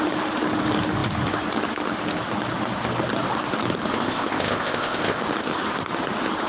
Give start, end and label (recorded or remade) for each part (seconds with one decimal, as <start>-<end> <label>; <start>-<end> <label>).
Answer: 0.0-3.9 recorded; 3.9-5.2 remade; 5.2-6.5 recorded